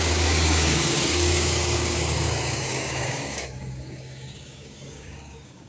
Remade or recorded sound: remade